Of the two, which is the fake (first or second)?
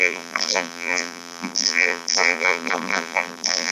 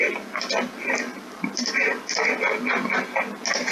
first